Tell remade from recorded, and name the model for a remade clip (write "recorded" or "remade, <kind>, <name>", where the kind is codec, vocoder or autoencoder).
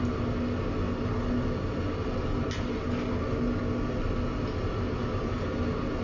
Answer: recorded